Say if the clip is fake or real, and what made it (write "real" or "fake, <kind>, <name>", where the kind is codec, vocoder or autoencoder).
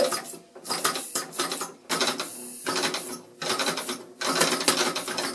real